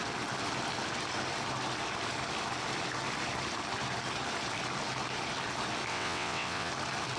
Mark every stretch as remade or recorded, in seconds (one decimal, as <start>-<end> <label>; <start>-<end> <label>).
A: 0.0-5.9 recorded; 5.9-6.7 remade; 6.7-7.2 recorded